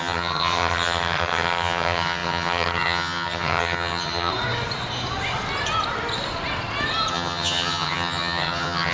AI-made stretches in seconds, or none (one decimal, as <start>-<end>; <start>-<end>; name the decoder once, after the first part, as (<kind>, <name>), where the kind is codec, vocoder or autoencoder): 0.0-4.3 (vocoder, HiFi-GAN); 7.1-8.9